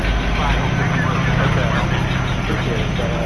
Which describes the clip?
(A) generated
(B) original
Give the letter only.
B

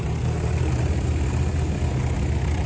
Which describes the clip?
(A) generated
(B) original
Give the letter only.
B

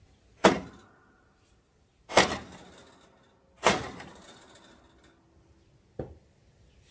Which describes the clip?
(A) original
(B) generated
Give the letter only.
A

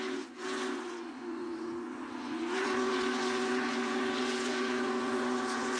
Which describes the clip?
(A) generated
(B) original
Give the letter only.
A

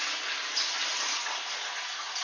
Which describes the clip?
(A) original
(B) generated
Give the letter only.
A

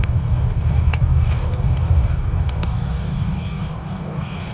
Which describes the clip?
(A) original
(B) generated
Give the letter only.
B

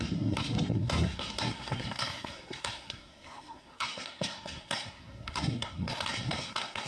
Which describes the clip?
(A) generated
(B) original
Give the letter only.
A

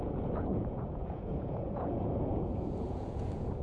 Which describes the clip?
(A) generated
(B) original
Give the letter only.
A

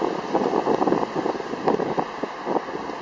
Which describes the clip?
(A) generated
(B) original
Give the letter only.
B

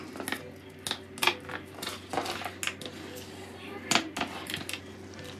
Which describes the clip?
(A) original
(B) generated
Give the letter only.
A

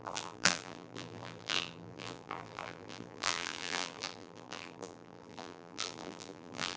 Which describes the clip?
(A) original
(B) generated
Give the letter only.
B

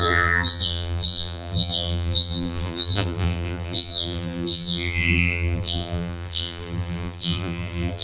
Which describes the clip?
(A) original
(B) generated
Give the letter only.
B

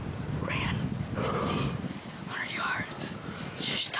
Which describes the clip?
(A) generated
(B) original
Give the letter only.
B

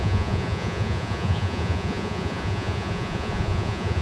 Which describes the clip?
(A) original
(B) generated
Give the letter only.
B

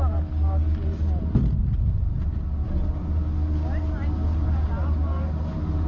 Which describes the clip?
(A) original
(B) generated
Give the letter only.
A